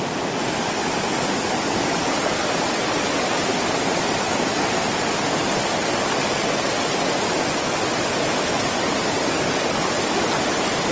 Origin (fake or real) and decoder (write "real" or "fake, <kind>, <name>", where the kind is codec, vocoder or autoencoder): real